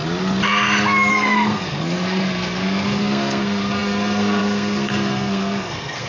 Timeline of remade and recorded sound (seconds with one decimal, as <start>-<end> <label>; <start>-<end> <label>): 0.0-1.1 recorded; 1.1-6.1 remade